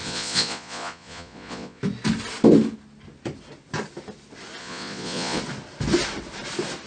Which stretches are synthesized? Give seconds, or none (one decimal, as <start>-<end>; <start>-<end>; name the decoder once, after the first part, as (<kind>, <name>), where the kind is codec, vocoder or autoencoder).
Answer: 0.0-1.8 (vocoder, Vocos); 4.6-5.4